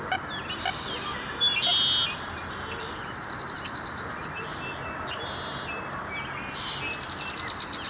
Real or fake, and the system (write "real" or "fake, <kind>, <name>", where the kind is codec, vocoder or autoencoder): real